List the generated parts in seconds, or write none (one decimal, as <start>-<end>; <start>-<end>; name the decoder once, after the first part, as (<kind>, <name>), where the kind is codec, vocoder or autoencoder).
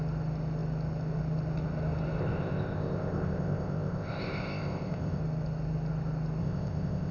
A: 2.2-5.2 (codec, ZipCodec); 6.4-7.1